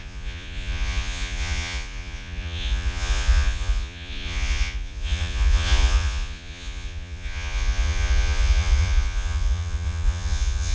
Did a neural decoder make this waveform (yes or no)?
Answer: yes